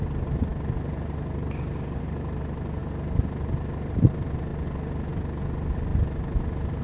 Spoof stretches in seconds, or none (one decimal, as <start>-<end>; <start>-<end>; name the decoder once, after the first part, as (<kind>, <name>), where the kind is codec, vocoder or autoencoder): none